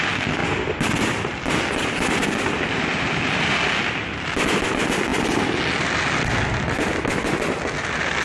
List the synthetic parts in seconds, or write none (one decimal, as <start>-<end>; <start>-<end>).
none

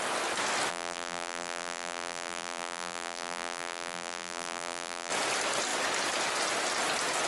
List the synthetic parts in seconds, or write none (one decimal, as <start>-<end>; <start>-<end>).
0.7-5.1

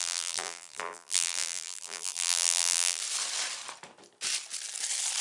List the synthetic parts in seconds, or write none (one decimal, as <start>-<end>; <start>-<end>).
0.0-3.0

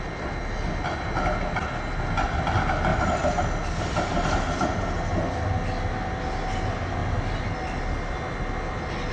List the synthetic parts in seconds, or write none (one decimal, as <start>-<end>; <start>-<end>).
none

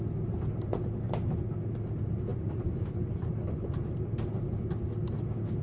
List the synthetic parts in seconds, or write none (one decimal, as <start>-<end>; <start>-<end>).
2.3-3.7

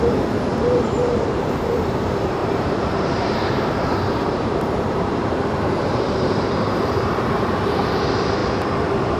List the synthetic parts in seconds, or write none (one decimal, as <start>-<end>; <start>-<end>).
0.0-8.4